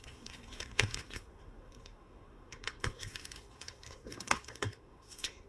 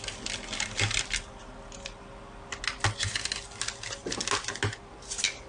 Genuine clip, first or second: second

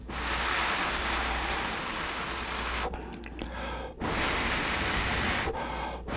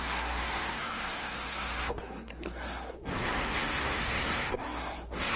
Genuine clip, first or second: first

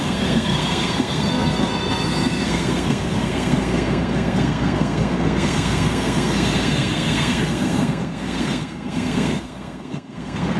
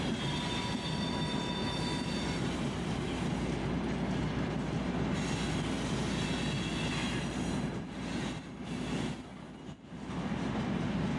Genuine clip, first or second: second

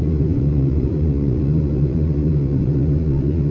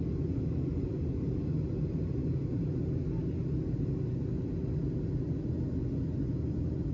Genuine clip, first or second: second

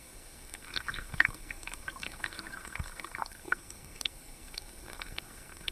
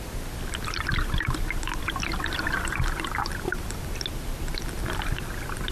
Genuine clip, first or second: second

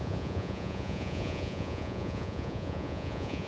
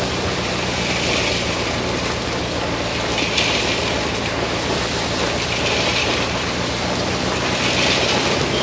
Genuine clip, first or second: second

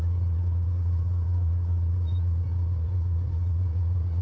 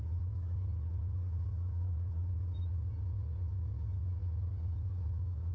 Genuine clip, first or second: second